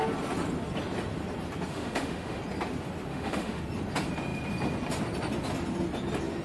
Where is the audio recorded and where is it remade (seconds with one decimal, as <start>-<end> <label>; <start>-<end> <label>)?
0.0-1.7 recorded; 1.7-2.4 remade; 2.4-3.1 recorded; 3.1-3.6 remade; 3.6-6.4 recorded